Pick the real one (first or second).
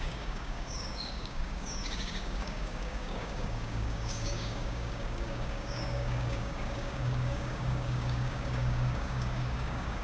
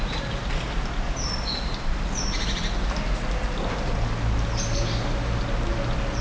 second